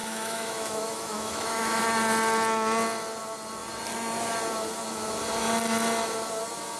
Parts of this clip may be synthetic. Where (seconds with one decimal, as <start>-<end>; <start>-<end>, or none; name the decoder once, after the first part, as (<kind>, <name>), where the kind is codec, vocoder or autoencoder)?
0.0-1.8 (autoencoder, DAC-VAE)